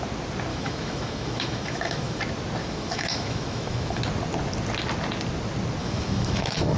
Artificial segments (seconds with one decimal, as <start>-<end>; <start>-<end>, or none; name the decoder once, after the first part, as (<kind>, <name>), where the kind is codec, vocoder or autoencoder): 0.5-2.2 (autoencoder, DAC-VAE); 2.6-4.0; 5.8-6.8